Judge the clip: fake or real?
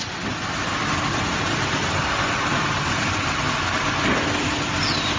real